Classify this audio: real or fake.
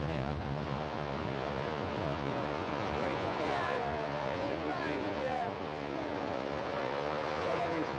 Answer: fake